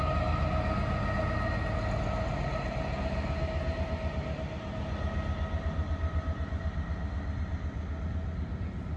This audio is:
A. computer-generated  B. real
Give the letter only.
B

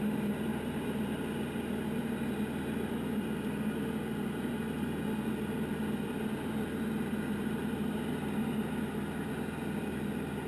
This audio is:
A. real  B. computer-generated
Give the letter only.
A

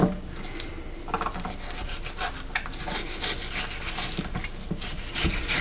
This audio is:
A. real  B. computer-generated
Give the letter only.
A